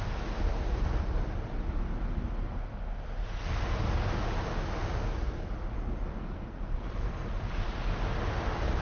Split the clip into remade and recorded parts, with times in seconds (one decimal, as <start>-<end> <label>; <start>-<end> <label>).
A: 0.0-6.1 recorded; 6.1-7.4 remade; 7.4-8.8 recorded